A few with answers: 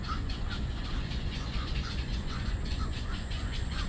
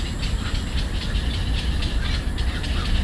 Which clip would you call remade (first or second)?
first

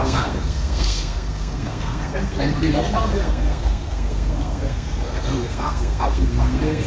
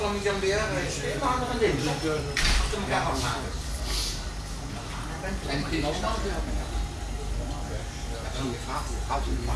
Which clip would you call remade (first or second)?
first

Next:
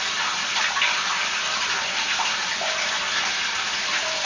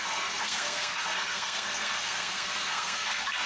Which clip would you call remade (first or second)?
second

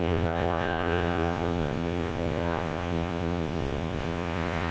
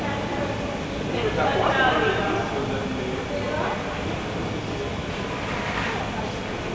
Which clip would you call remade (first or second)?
first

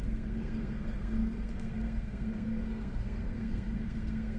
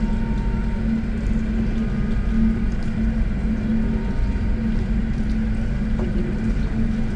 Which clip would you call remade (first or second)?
first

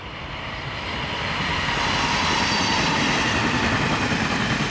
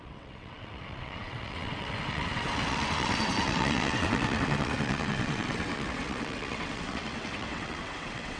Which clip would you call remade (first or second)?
second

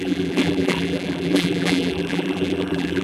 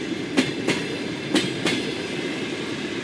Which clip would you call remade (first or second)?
first